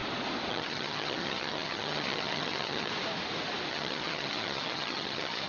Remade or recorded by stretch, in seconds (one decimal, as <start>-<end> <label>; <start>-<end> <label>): 0.0-0.5 recorded; 0.5-2.9 remade; 2.9-3.7 recorded; 3.7-5.5 remade